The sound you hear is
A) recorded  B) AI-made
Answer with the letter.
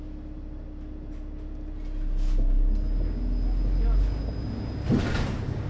A